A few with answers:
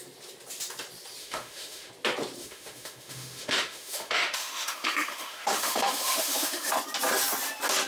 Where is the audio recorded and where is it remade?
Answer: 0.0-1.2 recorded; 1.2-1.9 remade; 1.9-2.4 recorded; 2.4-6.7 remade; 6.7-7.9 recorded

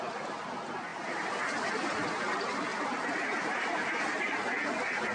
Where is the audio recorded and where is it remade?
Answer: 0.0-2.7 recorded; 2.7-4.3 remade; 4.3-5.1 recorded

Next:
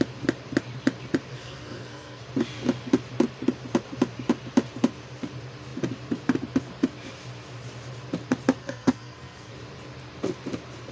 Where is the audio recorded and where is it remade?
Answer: 0.0-1.3 recorded; 1.3-2.2 remade; 2.2-8.6 recorded; 8.6-9.5 remade; 9.5-10.9 recorded